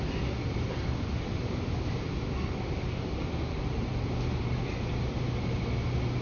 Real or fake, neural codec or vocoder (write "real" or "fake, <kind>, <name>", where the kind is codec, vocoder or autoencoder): real